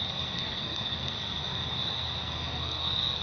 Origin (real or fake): fake